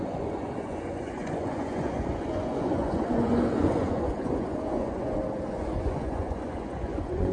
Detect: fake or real fake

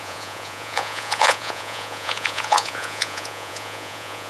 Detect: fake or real fake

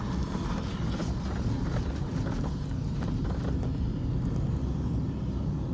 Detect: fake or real real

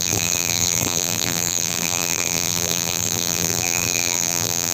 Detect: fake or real fake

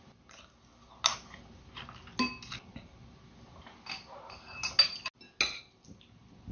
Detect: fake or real real